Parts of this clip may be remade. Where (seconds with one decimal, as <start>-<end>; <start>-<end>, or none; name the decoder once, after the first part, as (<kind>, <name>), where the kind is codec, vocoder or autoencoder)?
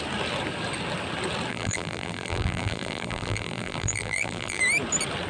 1.5-4.6 (vocoder, BigVGAN v2)